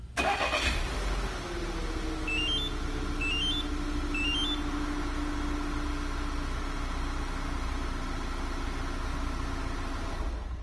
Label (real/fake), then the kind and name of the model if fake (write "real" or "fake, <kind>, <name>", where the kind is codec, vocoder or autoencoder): real